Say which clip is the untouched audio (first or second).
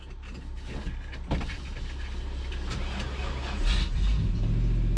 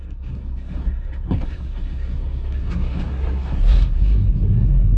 first